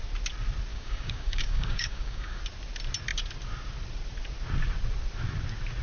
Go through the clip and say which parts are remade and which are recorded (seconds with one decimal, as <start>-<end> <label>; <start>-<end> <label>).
0.0-0.7 recorded; 0.7-2.4 remade; 2.4-5.8 recorded